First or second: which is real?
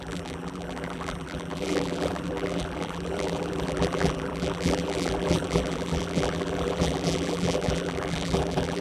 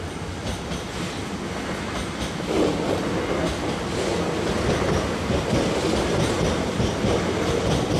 second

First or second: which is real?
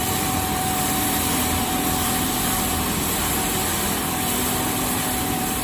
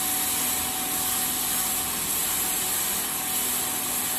second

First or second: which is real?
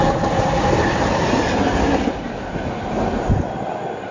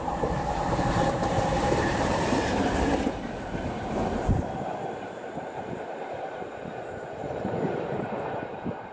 first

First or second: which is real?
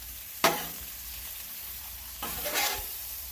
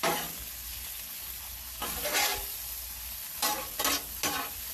second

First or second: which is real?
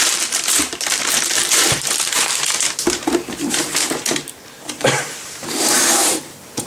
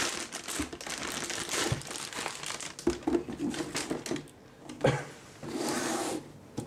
second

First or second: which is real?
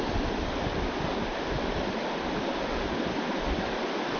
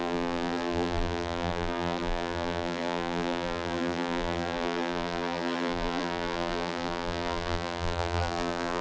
first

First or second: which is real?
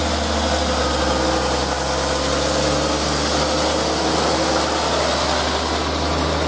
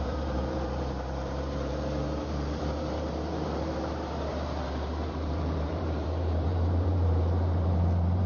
first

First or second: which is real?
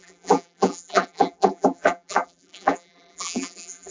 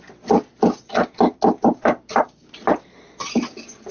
second